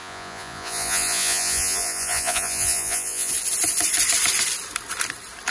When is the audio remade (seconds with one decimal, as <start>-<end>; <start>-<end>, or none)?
0.0-3.3